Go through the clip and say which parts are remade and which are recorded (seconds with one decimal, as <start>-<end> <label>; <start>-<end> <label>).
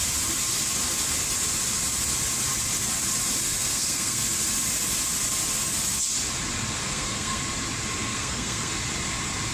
0.0-3.7 recorded; 3.7-4.2 remade; 4.2-6.8 recorded; 6.8-7.4 remade; 7.4-8.1 recorded; 8.1-8.7 remade; 8.7-9.5 recorded